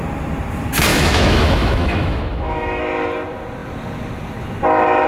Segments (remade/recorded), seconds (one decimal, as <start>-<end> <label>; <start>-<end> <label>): 0.0-0.9 recorded; 0.9-2.8 remade; 2.8-5.1 recorded